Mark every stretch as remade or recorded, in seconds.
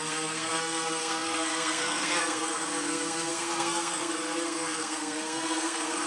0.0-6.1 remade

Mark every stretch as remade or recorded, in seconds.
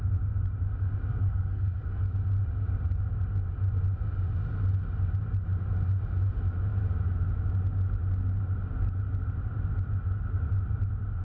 0.0-1.1 recorded; 1.1-2.0 remade; 2.0-11.2 recorded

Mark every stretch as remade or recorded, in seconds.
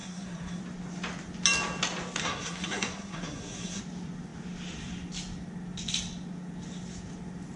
0.0-0.6 remade; 0.6-2.2 recorded; 2.2-3.8 remade; 3.8-7.6 recorded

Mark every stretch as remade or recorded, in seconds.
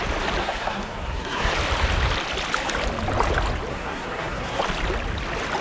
0.0-0.4 recorded; 0.4-1.5 remade; 1.5-3.7 recorded; 3.7-4.6 remade; 4.6-5.6 recorded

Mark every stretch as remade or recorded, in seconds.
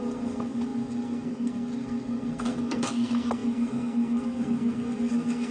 0.0-5.5 remade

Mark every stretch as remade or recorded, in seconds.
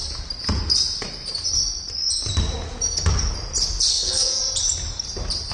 0.0-3.9 recorded; 3.9-4.4 remade; 4.4-5.5 recorded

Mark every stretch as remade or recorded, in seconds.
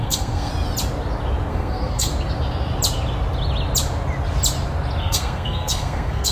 0.0-0.5 remade; 0.5-1.5 recorded; 1.5-2.1 remade; 2.1-5.0 recorded; 5.0-6.3 remade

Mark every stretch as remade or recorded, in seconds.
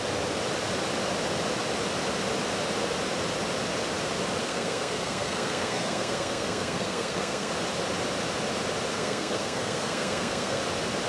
0.0-4.4 recorded; 4.4-7.5 remade; 7.5-8.9 recorded; 8.9-10.6 remade; 10.6-11.1 recorded